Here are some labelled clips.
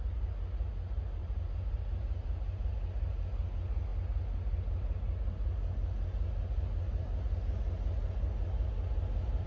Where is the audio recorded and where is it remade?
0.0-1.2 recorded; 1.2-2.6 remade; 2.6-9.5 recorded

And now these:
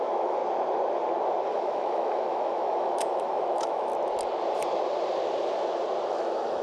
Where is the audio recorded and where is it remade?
0.0-0.4 remade; 0.4-1.5 recorded; 1.5-3.9 remade; 3.9-6.1 recorded; 6.1-6.6 remade

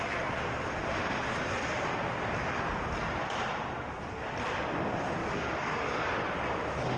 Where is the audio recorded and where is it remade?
0.0-5.2 recorded; 5.2-6.1 remade; 6.1-7.0 recorded